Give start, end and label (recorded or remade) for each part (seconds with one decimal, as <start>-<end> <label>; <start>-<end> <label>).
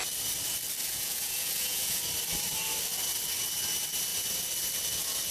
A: 0.0-0.8 recorded; 0.8-2.0 remade; 2.0-5.3 recorded